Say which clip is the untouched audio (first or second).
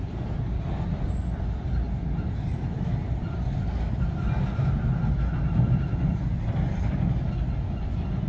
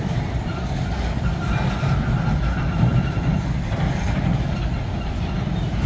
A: first